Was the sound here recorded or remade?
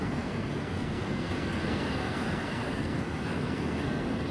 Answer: remade